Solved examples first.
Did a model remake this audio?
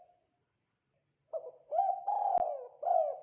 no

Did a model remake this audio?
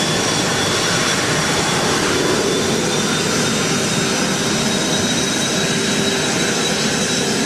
no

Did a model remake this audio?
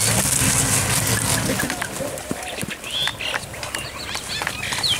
no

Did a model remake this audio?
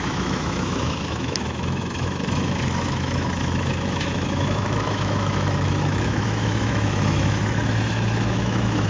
yes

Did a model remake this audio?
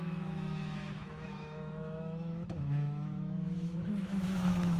yes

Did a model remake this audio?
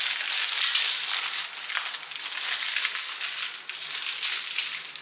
no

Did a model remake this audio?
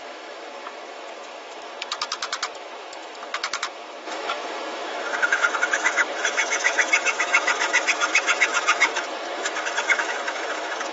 yes